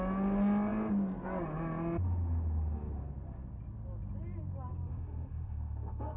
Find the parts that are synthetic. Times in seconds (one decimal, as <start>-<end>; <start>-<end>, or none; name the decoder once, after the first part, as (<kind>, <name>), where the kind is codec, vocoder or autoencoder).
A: 4.9-6.2 (autoencoder, DAC-VAE)

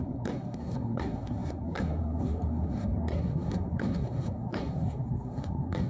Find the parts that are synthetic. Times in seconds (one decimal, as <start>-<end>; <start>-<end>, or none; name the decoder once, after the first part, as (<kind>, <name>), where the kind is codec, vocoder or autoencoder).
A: 0.0-5.9 (codec, SNAC)